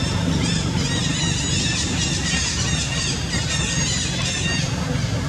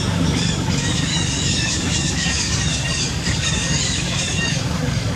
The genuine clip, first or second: first